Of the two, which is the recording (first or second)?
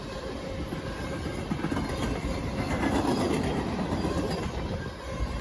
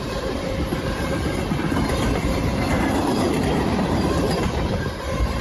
first